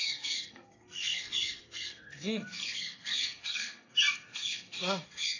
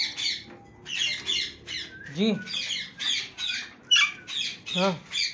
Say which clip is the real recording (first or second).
second